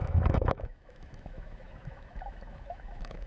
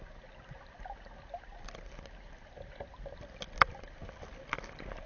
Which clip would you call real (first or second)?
second